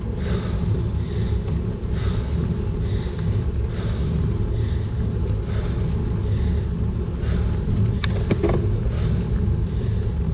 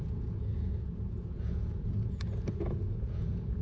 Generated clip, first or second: second